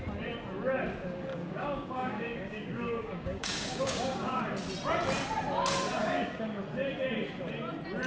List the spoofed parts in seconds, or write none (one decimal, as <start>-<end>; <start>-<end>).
1.3-4.4; 6.0-6.6

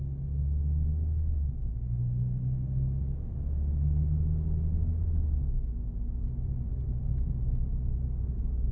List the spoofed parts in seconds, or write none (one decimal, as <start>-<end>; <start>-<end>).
none

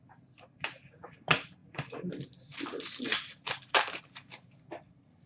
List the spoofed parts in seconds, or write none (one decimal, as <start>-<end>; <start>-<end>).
none